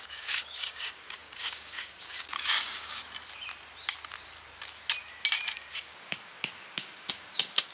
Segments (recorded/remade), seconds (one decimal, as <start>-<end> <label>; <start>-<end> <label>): 0.0-3.0 remade; 3.0-5.7 recorded; 5.7-7.7 remade